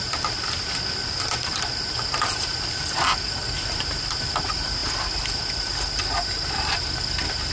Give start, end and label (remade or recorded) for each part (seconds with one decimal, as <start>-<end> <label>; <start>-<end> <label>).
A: 0.0-7.5 recorded